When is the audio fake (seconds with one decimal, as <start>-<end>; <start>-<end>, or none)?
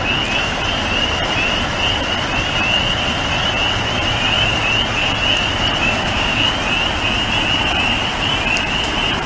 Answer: 5.8-6.5